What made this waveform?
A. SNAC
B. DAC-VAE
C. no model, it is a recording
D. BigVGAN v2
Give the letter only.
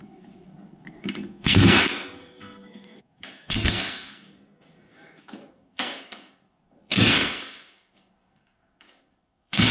A